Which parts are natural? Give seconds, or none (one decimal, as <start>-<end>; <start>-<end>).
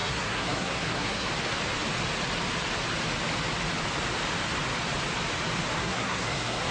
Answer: 1.3-5.8